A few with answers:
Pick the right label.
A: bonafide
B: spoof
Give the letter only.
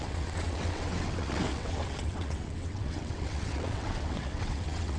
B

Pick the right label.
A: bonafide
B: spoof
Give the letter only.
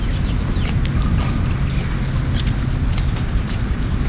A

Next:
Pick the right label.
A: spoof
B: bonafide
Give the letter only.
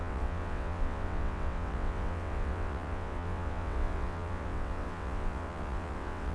A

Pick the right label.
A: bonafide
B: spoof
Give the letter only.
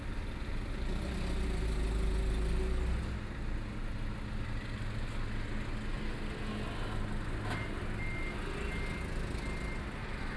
A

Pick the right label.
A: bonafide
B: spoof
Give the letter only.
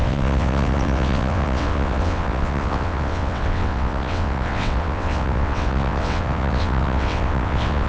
B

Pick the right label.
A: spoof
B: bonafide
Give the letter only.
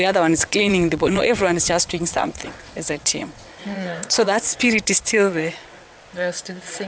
A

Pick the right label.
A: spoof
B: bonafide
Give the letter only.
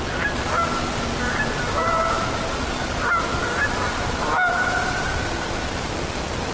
B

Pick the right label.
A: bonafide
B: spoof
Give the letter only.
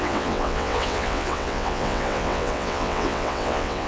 B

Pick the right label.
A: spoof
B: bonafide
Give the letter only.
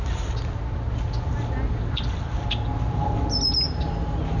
B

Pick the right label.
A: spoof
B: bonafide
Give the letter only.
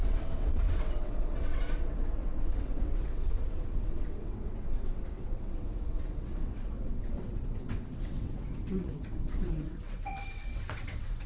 A